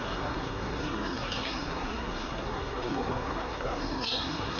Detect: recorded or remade remade